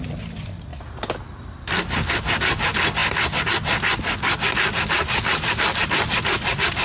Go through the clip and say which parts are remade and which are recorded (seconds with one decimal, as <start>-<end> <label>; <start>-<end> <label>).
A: 0.0-6.8 remade